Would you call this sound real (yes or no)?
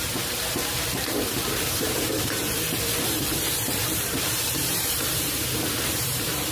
no